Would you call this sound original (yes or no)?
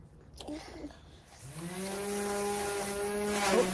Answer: yes